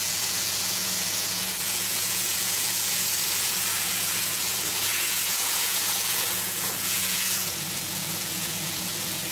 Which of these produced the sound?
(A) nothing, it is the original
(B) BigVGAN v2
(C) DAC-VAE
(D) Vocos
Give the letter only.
D